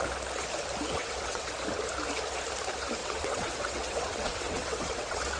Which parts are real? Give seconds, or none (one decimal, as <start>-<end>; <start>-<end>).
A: 0.0-1.0; 1.5-3.0